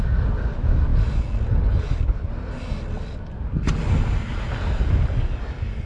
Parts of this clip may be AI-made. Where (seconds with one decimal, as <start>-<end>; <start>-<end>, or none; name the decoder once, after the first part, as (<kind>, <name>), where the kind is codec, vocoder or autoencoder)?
none